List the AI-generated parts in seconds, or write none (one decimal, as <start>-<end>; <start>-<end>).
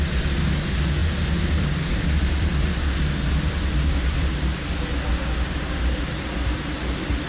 1.0-4.3